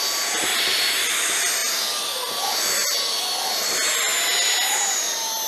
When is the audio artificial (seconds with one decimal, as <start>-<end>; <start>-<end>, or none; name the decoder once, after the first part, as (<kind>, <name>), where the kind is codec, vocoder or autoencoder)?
none